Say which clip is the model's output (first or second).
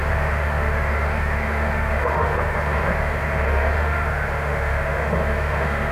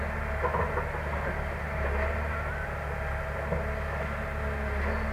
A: first